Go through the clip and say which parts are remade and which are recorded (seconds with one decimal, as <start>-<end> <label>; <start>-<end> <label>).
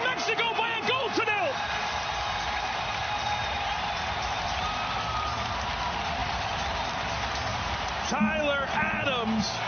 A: 0.0-3.0 recorded; 3.0-4.1 remade; 4.1-6.2 recorded; 6.2-6.9 remade; 6.9-7.5 recorded; 7.5-8.0 remade; 8.0-9.7 recorded